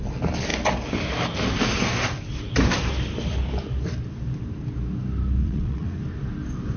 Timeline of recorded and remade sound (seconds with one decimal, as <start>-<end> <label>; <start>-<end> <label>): 0.0-5.4 recorded; 5.4-6.0 remade; 6.0-6.8 recorded